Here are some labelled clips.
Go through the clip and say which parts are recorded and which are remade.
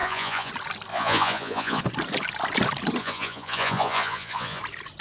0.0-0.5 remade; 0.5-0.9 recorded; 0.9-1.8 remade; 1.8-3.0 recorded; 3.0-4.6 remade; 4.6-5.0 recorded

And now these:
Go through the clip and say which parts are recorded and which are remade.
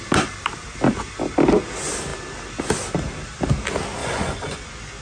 0.0-4.0 recorded; 4.0-4.6 remade; 4.6-5.0 recorded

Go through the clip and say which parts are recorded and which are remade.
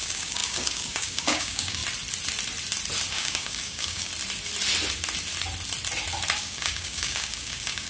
0.0-1.8 remade; 1.8-3.1 recorded; 3.1-4.1 remade; 4.1-6.4 recorded; 6.4-7.9 remade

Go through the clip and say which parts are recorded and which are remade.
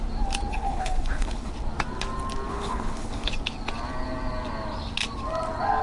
0.0-0.5 recorded; 0.5-1.5 remade; 1.5-2.5 recorded; 2.5-3.3 remade; 3.3-5.8 recorded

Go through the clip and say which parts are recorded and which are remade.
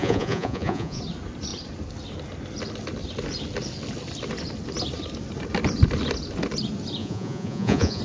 0.0-1.0 remade; 1.0-7.0 recorded; 7.0-8.0 remade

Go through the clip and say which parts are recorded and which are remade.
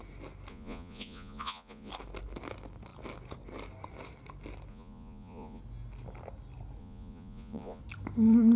0.0-0.5 recorded; 0.5-1.9 remade; 1.9-4.7 recorded; 4.7-5.6 remade; 5.6-6.8 recorded; 6.8-7.8 remade; 7.8-8.6 recorded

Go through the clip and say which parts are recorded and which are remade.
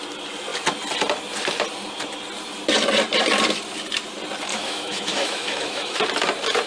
0.0-4.5 recorded; 4.5-6.0 remade; 6.0-6.7 recorded